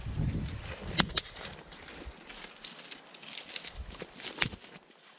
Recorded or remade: recorded